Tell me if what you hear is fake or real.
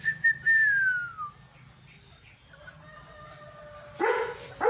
real